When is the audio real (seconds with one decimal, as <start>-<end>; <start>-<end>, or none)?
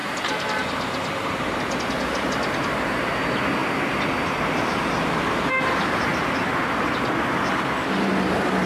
1.8-8.7